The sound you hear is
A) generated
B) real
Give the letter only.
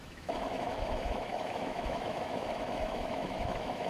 A